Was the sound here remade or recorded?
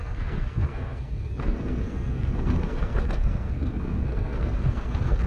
remade